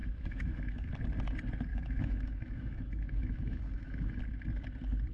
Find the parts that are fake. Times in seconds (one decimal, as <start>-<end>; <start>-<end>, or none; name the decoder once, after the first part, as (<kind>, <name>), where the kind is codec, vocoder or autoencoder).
0.0-0.9 (autoencoder, DAC-VAE); 1.7-4.2